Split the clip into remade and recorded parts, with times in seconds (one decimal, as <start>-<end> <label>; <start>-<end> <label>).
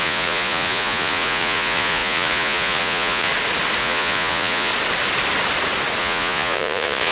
0.0-3.3 remade; 3.3-3.8 recorded; 3.8-4.7 remade; 4.7-6.0 recorded; 6.0-7.1 remade